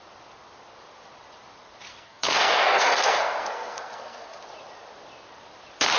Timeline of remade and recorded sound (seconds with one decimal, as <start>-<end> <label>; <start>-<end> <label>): 0.0-1.9 recorded; 1.9-4.4 remade; 4.4-6.0 recorded